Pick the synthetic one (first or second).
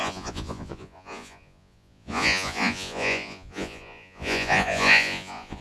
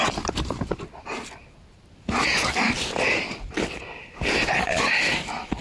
first